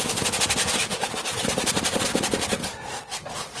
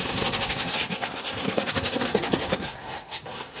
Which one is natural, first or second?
first